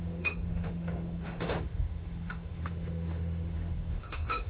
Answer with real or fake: fake